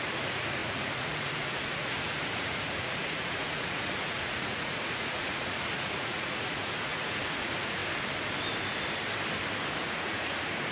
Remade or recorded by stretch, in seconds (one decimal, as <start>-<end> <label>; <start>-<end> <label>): 0.0-7.8 remade; 7.8-9.9 recorded; 9.9-10.7 remade